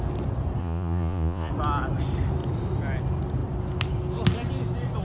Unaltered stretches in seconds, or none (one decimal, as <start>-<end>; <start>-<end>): 0.0-0.6; 1.5-5.0